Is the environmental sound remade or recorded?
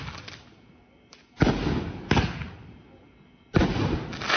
recorded